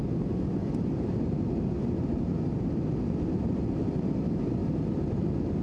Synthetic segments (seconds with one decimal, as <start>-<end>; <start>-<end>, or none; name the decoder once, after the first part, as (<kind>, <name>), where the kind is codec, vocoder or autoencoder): none